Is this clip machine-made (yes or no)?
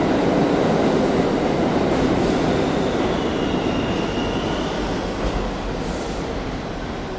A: no